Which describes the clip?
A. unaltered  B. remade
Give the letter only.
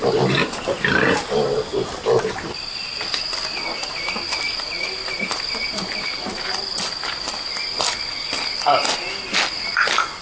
A